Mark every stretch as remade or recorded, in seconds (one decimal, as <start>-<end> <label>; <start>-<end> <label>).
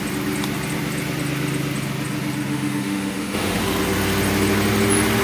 0.0-2.5 recorded; 2.5-3.6 remade; 3.6-5.2 recorded